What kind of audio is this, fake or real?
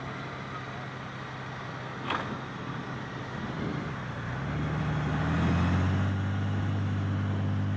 real